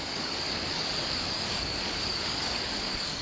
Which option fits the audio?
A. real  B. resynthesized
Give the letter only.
B